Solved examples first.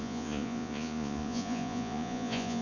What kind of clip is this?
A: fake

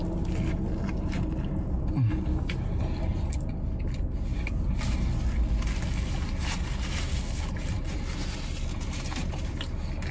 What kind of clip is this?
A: real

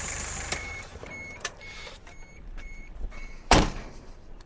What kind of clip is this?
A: fake